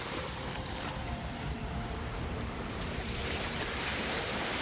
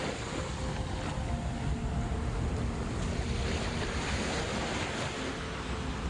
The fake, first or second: first